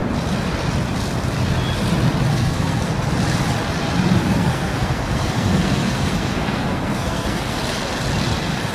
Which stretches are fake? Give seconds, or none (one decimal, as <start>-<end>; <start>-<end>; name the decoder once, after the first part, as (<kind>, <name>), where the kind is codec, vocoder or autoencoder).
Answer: 2.3-2.9 (codec, SNAC); 4.2-7.6